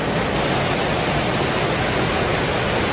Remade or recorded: recorded